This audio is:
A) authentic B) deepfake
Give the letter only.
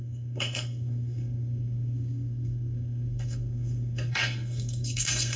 B